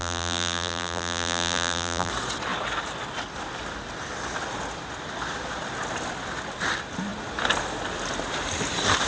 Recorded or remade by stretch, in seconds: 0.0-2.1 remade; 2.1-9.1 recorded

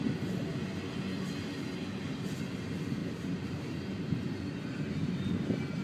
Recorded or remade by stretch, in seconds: 0.0-3.0 recorded; 3.0-4.2 remade; 4.2-5.8 recorded

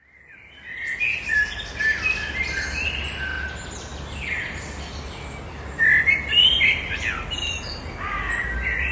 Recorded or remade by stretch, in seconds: 0.0-3.9 recorded; 3.9-5.4 remade; 5.4-8.9 recorded